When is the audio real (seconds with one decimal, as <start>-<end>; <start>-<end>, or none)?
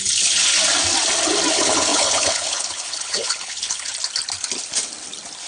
0.5-1.5; 3.9-5.5